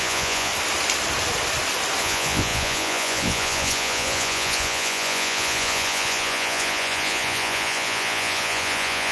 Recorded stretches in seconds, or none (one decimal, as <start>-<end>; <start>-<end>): 0.5-2.0